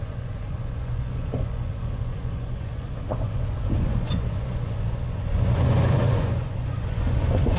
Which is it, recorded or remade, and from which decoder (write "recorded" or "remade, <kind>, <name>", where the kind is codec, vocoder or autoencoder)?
remade, vocoder, Vocos